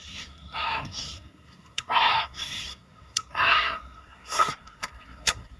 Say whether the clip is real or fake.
fake